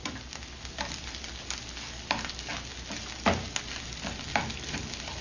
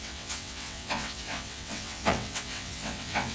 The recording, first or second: first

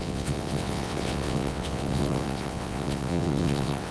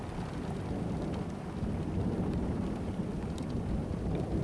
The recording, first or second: second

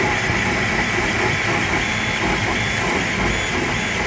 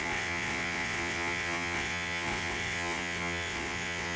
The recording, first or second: first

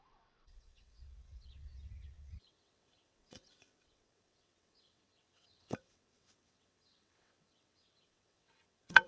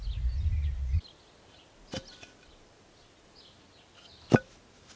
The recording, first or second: second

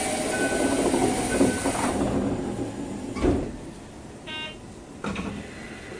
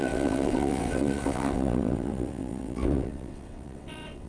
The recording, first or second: first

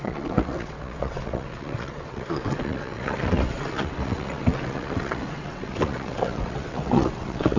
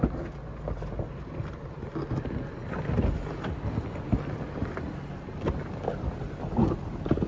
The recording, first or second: second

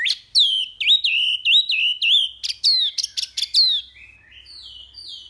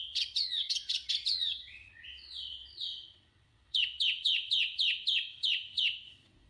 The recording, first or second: first